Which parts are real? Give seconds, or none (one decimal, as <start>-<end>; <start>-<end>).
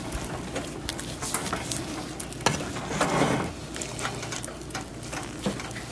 0.0-5.9